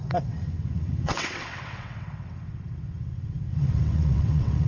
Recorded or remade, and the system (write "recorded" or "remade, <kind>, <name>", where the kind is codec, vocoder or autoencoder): remade, vocoder, WaveNeXt